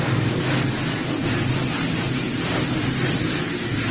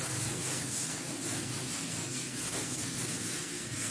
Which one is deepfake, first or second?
second